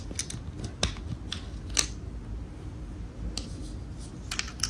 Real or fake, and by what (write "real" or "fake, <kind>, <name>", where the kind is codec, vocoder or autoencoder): real